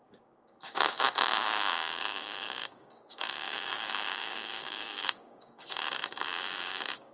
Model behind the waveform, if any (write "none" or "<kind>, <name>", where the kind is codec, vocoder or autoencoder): codec, DAC